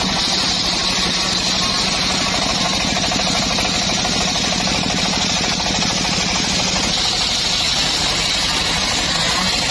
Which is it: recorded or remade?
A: recorded